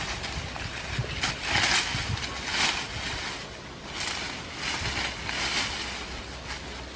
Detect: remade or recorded recorded